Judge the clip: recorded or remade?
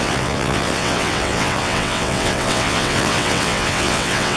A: remade